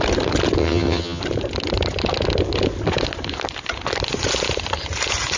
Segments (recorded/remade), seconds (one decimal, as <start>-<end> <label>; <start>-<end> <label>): 0.0-0.6 recorded; 0.6-1.2 remade; 1.2-5.4 recorded